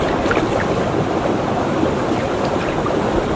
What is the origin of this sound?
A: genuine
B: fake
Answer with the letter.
A